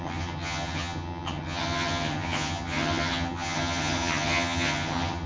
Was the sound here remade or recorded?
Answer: remade